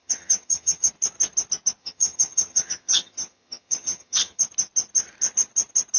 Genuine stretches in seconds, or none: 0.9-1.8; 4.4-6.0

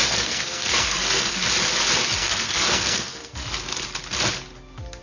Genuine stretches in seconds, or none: 1.3-2.2; 3.5-5.0

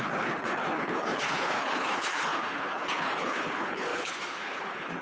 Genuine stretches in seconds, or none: none

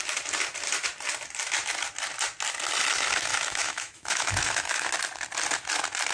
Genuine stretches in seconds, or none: 0.0-3.3; 4.9-6.1

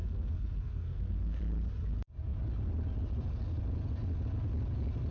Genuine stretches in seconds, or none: 1.4-5.1